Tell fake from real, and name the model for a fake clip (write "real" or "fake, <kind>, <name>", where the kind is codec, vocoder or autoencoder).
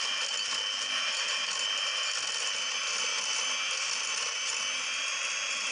real